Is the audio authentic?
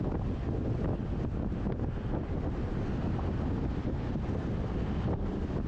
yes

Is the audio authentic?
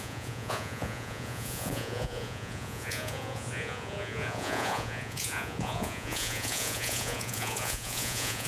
no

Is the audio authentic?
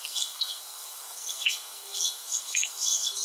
no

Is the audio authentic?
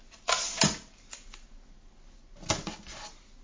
yes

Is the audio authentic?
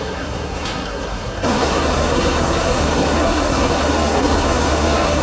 no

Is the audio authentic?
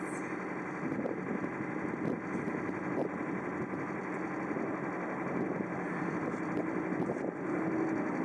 yes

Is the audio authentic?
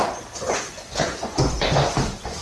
no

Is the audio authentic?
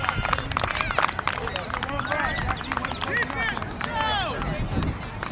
yes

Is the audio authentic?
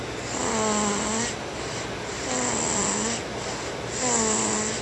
yes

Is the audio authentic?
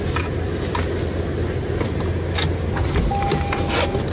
yes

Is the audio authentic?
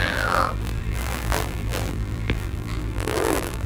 no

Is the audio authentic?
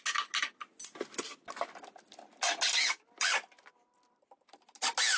yes